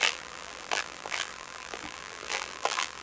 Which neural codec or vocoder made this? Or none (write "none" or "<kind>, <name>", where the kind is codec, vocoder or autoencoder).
vocoder, BigVGAN v2